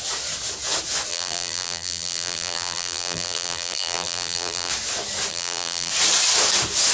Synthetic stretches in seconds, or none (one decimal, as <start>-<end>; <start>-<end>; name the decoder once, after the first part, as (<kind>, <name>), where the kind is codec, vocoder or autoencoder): 1.1-4.7 (vocoder, BigVGAN v2); 5.3-5.9